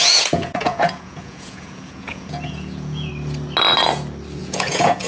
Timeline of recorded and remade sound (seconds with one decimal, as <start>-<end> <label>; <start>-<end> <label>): 0.0-3.1 remade; 3.1-4.4 recorded; 4.4-5.1 remade